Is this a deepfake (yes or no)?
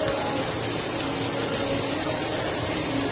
no